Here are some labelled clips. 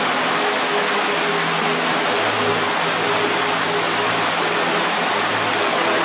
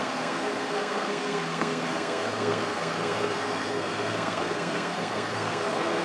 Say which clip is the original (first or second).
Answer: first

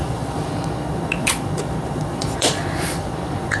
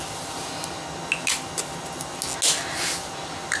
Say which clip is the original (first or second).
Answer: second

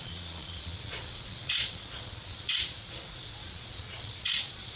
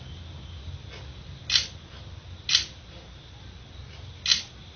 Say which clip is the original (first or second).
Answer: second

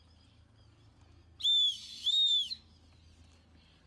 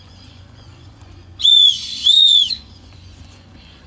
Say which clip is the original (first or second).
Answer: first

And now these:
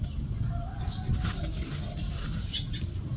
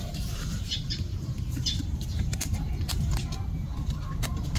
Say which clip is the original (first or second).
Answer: first